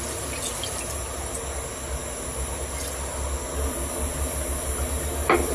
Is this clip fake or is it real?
real